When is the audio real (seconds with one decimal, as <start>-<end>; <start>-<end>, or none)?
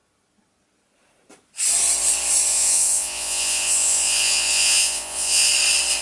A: 0.0-2.5; 5.5-6.0